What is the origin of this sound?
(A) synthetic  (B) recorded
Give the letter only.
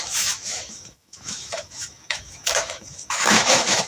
A